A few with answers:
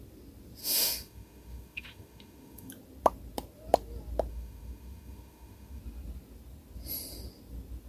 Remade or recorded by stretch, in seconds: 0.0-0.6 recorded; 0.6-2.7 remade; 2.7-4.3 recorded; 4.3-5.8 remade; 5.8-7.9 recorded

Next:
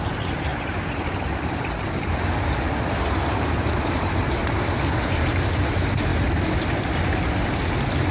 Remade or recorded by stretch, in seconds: 0.0-4.4 remade; 4.4-5.2 recorded; 5.2-6.1 remade; 6.1-8.1 recorded

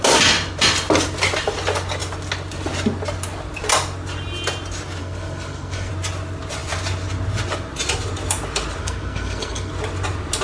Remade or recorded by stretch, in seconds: 0.0-5.0 recorded; 5.0-5.9 remade; 5.9-8.8 recorded; 8.8-9.7 remade; 9.7-10.4 recorded

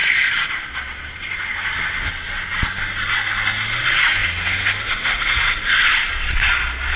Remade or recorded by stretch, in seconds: 0.0-7.0 recorded

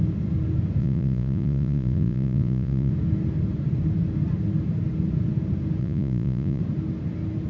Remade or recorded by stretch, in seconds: 0.0-0.8 recorded; 0.8-2.9 remade; 2.9-5.8 recorded; 5.8-6.6 remade; 6.6-7.5 recorded

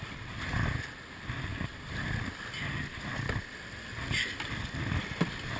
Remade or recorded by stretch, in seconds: 0.0-5.6 recorded

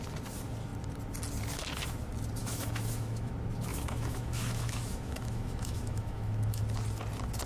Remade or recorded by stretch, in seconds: 0.0-2.4 recorded; 2.4-3.3 remade; 3.3-3.7 recorded; 3.7-6.6 remade; 6.6-7.5 recorded